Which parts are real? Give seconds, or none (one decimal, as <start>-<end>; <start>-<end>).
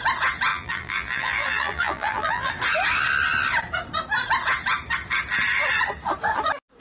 0.0-0.5; 2.5-6.8